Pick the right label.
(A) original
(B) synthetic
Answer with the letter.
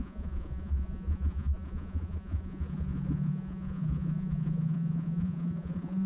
B